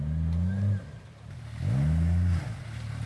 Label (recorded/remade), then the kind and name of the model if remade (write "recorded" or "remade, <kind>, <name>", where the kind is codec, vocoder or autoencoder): recorded